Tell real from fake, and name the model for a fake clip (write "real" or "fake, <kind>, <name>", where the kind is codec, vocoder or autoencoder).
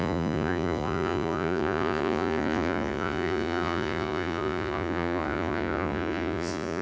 fake, vocoder, Vocos